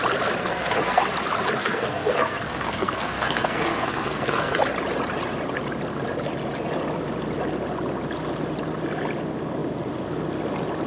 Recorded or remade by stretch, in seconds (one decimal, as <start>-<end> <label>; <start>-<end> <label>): 0.0-0.4 recorded; 0.4-1.0 remade; 1.0-1.6 recorded; 1.6-4.6 remade; 4.6-10.9 recorded